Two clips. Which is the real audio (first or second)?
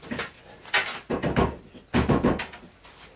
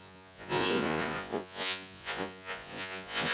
first